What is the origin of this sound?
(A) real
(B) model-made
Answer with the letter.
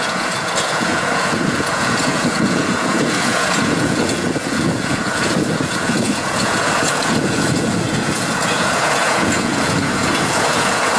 B